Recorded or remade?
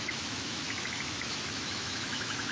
remade